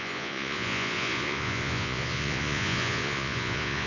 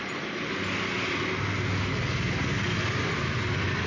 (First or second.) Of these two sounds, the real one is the second